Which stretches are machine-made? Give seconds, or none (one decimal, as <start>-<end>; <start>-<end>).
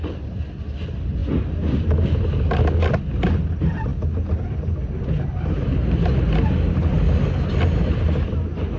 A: none